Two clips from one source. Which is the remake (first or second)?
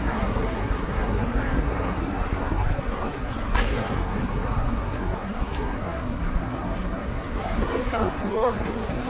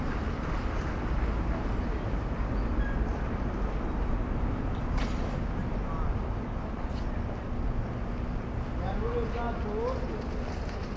first